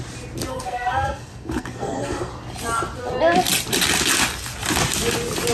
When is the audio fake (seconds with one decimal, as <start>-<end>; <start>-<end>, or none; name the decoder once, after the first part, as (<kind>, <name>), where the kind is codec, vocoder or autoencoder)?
0.5-2.3 (codec, SNAC)